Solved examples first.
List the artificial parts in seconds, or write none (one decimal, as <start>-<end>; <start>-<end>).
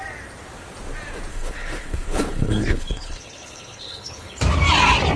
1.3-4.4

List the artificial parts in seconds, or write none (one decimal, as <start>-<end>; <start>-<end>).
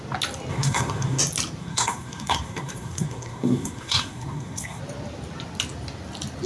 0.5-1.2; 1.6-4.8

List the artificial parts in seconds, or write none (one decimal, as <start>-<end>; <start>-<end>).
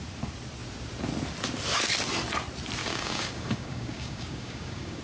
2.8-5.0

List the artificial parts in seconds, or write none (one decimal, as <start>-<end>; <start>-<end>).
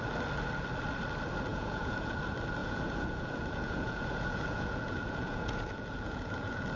1.5-2.2; 2.6-6.8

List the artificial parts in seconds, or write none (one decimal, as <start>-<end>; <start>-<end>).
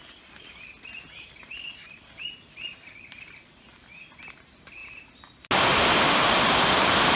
none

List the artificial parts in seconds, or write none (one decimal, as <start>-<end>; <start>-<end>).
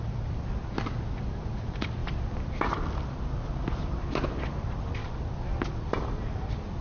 none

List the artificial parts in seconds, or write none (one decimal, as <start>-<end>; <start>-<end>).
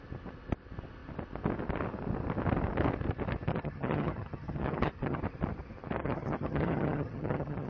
3.5-5.2; 6.0-7.7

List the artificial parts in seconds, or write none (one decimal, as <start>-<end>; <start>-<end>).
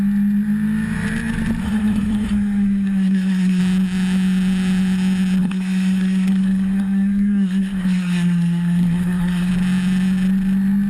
1.6-3.6; 5.4-9.5